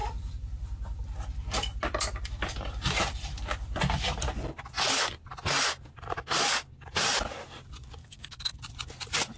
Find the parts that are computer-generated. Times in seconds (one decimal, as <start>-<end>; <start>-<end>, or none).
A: 8.0-8.6